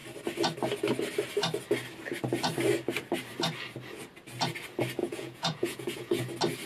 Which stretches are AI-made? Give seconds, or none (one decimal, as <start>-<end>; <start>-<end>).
5.0-6.2